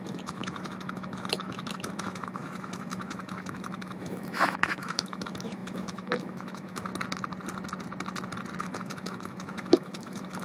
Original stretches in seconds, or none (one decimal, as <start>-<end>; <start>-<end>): 6.9-8.6